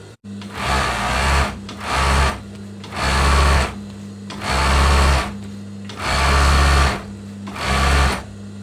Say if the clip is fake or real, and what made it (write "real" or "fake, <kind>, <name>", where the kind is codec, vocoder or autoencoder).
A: real